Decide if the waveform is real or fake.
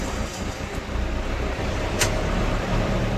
fake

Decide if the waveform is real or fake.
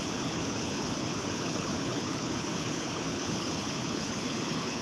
fake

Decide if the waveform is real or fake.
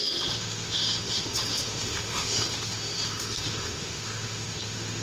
fake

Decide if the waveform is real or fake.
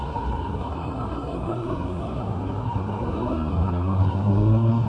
fake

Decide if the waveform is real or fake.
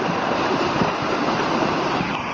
fake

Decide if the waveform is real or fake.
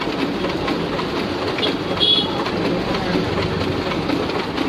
real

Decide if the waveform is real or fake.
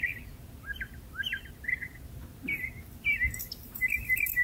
real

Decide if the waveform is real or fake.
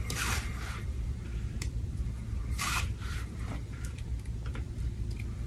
fake